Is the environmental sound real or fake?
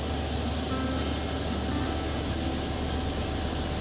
real